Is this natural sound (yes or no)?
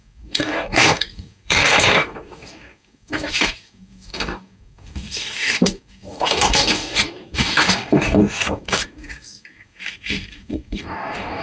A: no